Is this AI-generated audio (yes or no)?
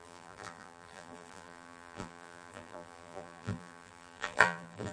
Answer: yes